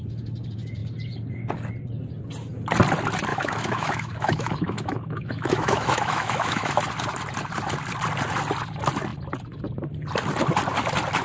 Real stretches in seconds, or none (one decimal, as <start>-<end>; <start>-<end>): 0.0-3.3; 6.8-11.2